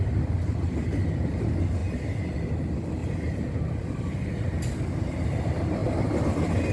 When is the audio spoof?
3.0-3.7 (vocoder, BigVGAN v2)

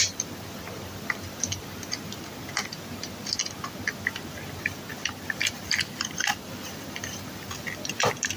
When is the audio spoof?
4.9-7.6 (vocoder, BigVGAN v2)

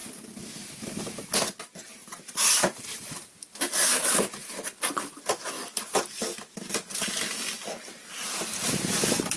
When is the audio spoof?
2.0-3.0 (vocoder, BigVGAN v2)

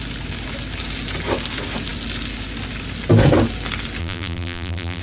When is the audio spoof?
4.0-5.0 (vocoder, BigVGAN v2)